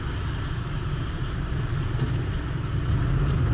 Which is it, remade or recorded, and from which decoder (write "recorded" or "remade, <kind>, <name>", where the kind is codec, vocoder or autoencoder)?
recorded